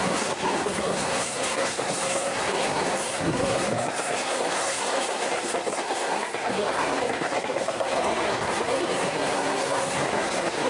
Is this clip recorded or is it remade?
remade